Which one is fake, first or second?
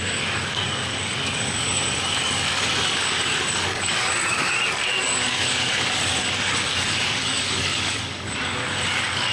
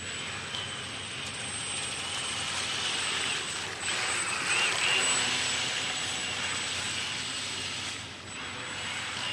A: first